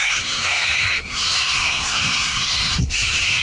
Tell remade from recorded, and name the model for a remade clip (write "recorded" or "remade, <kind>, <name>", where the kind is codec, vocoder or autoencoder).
remade, codec, SNAC